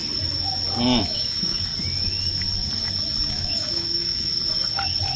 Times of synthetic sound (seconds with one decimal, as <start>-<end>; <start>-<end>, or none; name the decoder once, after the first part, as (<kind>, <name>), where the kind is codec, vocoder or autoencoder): 1.0-1.7 (autoencoder, DAC-VAE); 3.3-4.3